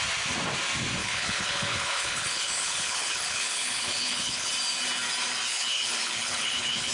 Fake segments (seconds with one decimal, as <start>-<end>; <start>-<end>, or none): 1.0-4.5; 5.5-6.9